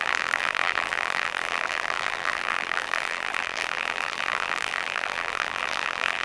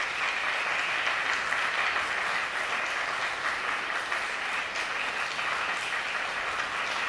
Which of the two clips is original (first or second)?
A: second